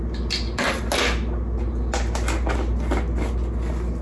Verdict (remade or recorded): recorded